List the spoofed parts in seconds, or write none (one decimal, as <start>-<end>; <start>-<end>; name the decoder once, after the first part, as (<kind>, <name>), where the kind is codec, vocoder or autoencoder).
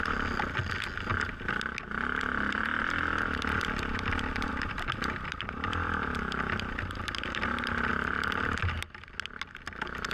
4.5-7.0 (vocoder, BigVGAN v2); 7.9-8.6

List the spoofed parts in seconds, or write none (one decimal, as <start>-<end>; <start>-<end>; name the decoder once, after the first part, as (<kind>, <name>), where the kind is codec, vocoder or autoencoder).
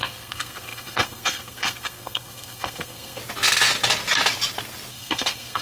0.0-3.2 (codec, SNAC); 4.9-5.6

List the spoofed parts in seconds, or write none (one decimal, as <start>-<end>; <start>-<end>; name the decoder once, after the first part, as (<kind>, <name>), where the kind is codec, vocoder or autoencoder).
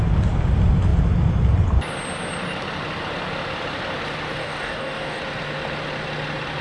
4.4-5.2 (codec, DAC)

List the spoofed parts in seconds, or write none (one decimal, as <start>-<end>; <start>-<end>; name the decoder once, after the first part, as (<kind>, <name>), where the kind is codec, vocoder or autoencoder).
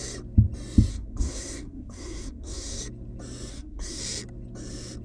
0.9-2.8 (codec, SNAC); 3.5-4.0